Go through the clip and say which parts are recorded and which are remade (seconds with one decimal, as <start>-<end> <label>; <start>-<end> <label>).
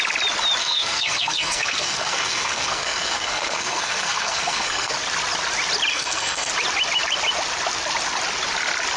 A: 0.0-0.6 recorded; 0.6-4.9 remade; 4.9-5.9 recorded; 5.9-6.5 remade; 6.5-9.0 recorded